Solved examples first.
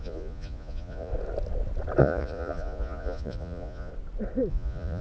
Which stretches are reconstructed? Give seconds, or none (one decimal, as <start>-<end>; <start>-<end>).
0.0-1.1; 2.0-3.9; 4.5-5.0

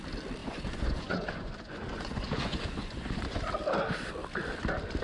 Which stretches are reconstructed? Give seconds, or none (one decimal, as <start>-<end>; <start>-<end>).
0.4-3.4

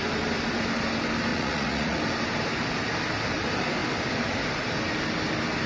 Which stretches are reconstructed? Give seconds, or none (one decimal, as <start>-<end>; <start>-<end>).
1.3-2.0

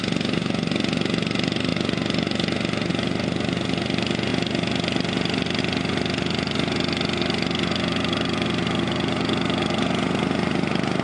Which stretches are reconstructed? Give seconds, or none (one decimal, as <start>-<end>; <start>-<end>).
none

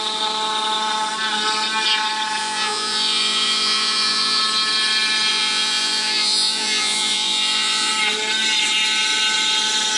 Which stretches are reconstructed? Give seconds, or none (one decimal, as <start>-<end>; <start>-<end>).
2.4-4.4; 5.3-7.9